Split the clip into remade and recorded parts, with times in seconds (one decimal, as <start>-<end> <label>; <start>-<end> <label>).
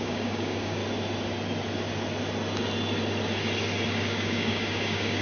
0.0-0.8 remade; 0.8-3.9 recorded; 3.9-5.2 remade